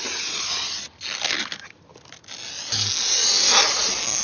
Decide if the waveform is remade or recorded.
recorded